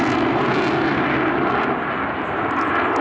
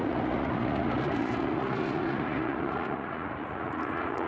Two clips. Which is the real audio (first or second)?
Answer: first